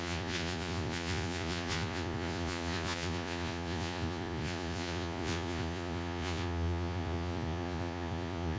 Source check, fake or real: fake